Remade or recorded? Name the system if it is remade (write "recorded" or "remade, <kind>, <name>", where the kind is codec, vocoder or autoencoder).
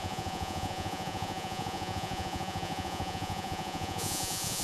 remade, vocoder, Vocos